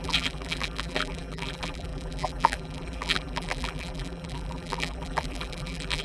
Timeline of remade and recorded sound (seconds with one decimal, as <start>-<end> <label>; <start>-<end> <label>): 0.0-6.0 remade